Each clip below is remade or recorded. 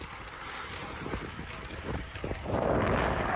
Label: recorded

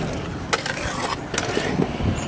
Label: recorded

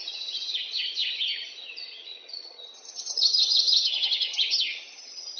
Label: remade